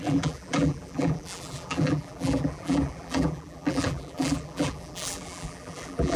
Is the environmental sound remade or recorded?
remade